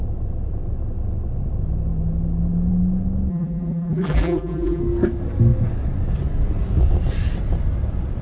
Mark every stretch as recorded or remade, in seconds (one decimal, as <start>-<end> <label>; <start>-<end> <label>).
0.0-3.3 recorded; 3.3-4.8 remade; 4.8-8.2 recorded